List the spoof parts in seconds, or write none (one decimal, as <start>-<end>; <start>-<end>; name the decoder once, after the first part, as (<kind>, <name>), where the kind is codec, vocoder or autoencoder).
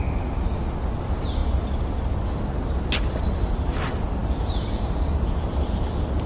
4.2-4.7 (vocoder, BigVGAN v2)